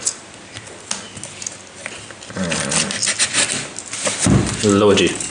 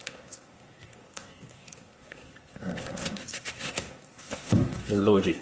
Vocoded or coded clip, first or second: second